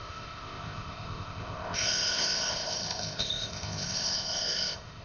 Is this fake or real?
fake